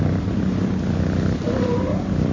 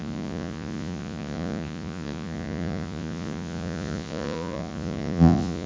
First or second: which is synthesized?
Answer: second